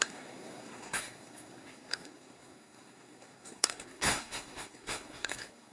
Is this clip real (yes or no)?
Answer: no